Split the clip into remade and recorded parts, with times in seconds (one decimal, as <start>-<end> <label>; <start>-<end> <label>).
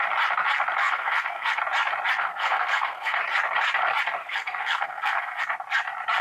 0.0-0.8 recorded; 0.8-1.6 remade; 1.6-2.3 recorded; 2.3-3.2 remade; 3.2-4.2 recorded; 4.2-5.4 remade; 5.4-6.2 recorded